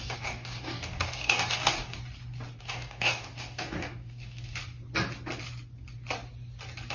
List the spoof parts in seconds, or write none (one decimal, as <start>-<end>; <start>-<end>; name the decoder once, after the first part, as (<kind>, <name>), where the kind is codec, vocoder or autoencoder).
0.0-2.0 (codec, DAC); 2.6-4.6